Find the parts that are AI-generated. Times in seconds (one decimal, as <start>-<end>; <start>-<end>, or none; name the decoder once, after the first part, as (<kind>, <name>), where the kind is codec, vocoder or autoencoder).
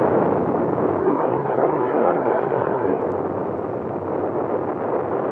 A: 1.0-3.0 (codec, SNAC)